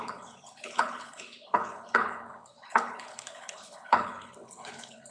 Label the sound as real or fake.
fake